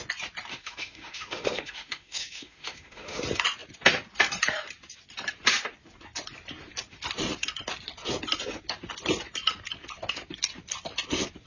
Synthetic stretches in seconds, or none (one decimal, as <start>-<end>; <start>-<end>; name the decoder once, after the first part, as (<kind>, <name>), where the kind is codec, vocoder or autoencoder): 0.5-3.2 (autoencoder, DAC-VAE)